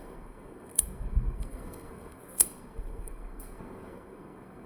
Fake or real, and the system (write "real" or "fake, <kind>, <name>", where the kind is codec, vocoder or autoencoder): fake, codec, SNAC